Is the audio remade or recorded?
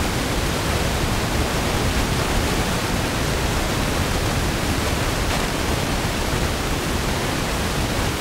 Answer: remade